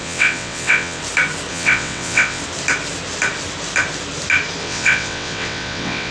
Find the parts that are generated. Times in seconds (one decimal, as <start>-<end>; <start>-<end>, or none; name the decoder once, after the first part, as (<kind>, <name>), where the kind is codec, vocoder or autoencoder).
0.0-1.0 (vocoder, WaveNeXt); 1.5-2.4; 4.6-6.1